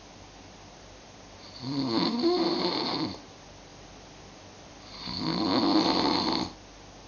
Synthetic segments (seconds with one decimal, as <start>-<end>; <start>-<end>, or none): none